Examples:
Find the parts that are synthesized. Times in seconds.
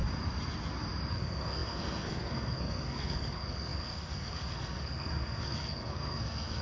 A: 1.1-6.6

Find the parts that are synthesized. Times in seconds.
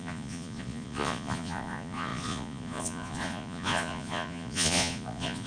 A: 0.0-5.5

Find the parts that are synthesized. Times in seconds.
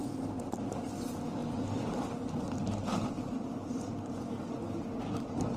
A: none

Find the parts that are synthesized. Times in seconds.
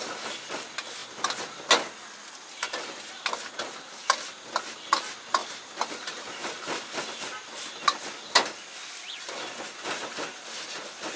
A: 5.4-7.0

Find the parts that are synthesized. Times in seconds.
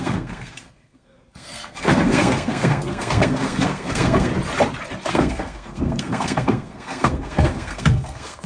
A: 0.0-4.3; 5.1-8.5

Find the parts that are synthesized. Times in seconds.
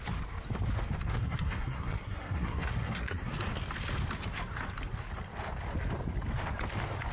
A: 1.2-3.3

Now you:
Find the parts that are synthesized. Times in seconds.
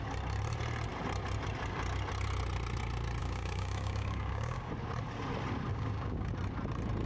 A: 3.2-4.7; 5.7-6.3